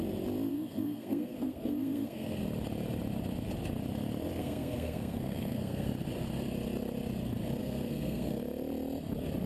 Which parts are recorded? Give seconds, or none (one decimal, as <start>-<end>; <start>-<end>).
0.0-0.5; 2.4-4.4; 5.9-7.6; 8.4-9.5